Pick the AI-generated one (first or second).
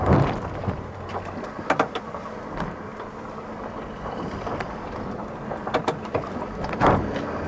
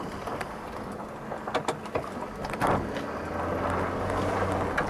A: first